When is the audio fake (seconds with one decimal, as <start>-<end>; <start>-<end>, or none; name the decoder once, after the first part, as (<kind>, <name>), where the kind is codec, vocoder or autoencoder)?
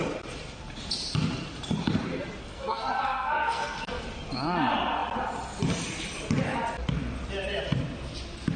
2.4-4.0 (codec, SNAC)